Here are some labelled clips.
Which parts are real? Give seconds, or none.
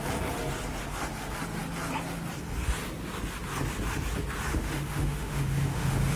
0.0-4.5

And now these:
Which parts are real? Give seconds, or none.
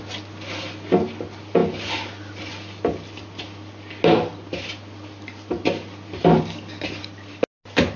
0.0-8.0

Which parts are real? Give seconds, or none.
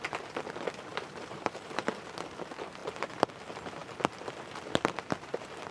0.0-0.9; 1.9-5.7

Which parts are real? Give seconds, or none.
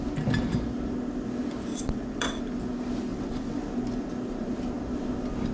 0.0-1.7; 2.4-3.1; 3.6-5.5